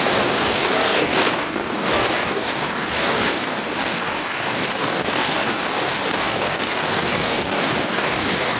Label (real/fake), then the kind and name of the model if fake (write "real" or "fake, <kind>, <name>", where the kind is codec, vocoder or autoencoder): fake, codec, DAC